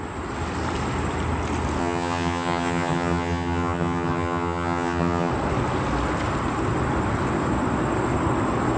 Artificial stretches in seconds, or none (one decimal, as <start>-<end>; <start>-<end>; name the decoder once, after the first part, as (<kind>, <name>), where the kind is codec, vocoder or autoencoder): 1.8-5.3 (vocoder, HiFi-GAN)